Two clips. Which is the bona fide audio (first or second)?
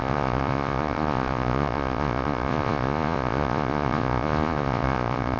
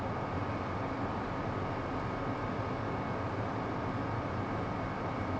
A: second